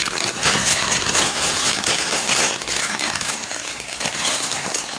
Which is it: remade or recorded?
remade